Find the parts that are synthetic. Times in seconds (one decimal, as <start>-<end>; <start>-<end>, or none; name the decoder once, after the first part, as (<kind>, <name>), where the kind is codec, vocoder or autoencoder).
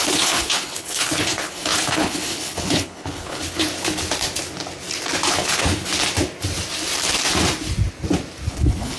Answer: 0.0-3.7 (codec, HILCodec); 5.3-5.9; 8.5-9.0